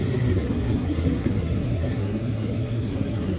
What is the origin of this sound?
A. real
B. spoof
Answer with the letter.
B